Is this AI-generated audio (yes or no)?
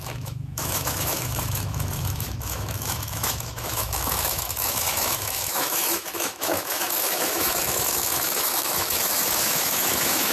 yes